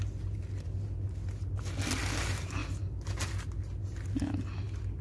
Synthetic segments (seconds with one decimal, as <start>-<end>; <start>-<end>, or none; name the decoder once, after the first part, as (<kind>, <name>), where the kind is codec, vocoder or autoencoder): none